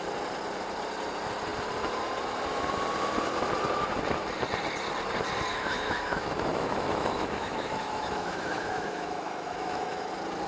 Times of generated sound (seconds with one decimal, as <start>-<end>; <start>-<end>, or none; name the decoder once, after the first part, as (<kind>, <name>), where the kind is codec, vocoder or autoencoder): 5.5-10.1 (autoencoder, DAC-VAE)